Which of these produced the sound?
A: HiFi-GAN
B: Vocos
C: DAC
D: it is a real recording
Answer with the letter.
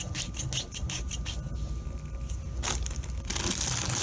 D